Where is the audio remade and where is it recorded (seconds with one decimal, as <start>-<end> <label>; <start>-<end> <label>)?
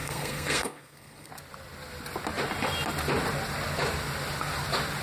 0.0-1.3 remade; 1.3-5.0 recorded